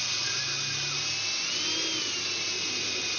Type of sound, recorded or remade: recorded